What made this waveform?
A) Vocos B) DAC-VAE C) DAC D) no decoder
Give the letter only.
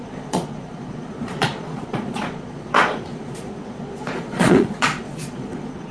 A